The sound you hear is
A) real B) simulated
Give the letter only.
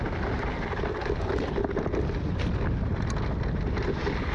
A